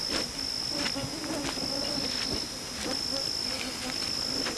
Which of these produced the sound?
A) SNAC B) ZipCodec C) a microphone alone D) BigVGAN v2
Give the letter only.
C